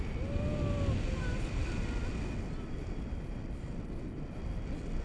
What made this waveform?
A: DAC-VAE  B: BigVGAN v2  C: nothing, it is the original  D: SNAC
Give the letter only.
C